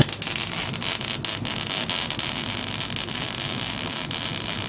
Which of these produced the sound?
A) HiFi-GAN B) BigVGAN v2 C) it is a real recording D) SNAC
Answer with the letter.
C